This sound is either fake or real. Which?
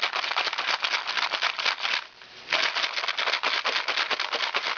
real